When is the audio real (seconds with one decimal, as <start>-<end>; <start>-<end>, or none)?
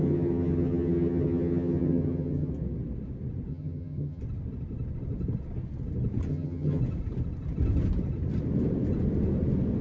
2.5-3.5; 4.2-6.3; 6.8-9.8